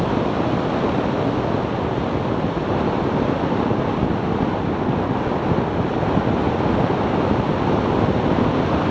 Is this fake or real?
real